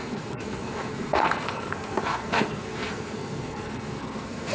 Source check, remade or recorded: remade